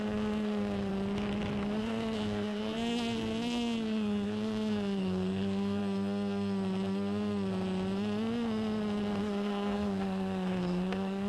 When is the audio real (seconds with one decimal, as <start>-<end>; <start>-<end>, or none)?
0.9-1.8; 5.8-9.2